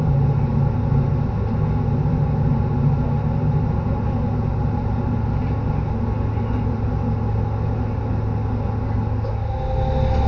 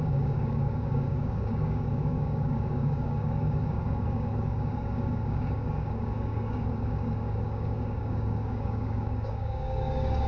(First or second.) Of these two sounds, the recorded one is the first